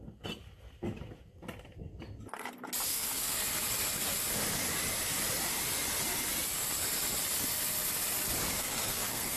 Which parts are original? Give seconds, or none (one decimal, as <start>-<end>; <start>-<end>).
0.0-2.9; 3.4-8.6

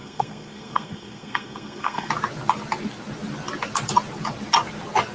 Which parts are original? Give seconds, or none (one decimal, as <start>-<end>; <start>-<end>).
2.1-5.1

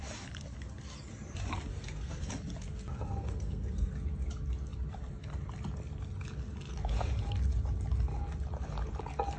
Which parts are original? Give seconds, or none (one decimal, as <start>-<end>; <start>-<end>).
0.0-1.7; 2.3-2.9; 3.9-9.4

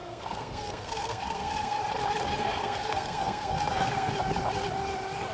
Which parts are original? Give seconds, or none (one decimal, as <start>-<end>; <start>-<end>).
1.8-2.3; 4.1-5.3

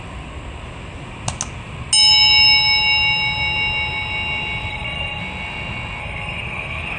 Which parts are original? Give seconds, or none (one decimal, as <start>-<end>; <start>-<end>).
0.0-4.7; 5.2-6.0

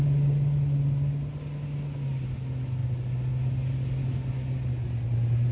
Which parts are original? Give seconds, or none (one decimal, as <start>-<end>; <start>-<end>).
0.0-5.5